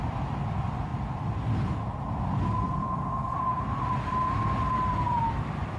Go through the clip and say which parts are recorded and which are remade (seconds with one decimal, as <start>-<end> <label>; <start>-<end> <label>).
0.0-5.8 recorded